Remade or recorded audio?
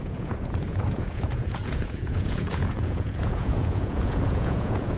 remade